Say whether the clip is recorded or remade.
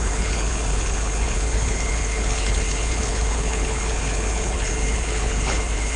remade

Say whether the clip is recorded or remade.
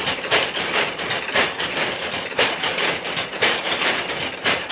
remade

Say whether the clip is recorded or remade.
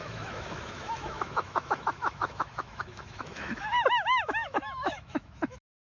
remade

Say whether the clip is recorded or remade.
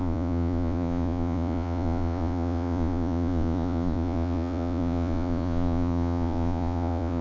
remade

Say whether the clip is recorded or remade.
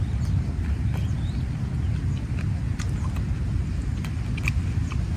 recorded